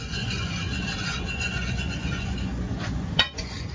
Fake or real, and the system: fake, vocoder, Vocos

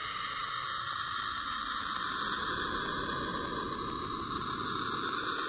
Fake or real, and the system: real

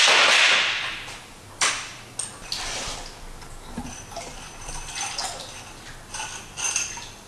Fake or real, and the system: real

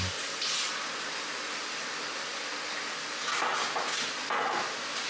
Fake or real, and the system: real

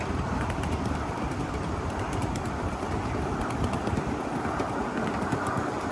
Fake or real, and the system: real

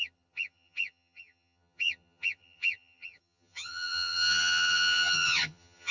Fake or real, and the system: fake, vocoder, HiFi-GAN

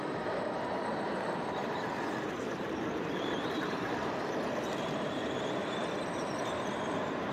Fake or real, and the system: fake, vocoder, BigVGAN v2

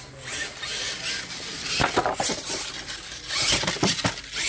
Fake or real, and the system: real